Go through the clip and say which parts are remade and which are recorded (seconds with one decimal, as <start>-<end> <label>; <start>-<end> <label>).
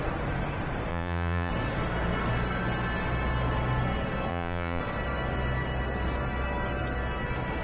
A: 0.0-0.9 recorded; 0.9-1.5 remade; 1.5-4.3 recorded; 4.3-4.8 remade; 4.8-7.6 recorded